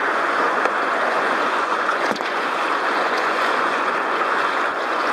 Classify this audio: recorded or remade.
remade